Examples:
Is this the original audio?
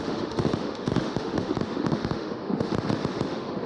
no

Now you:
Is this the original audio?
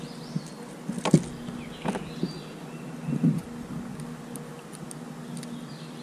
yes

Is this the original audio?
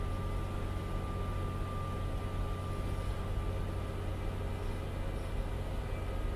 yes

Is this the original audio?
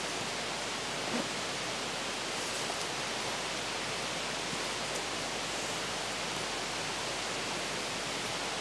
yes